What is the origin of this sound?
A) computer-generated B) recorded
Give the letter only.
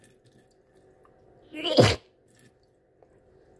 B